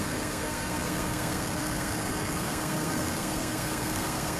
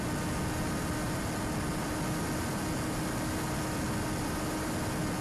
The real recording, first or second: second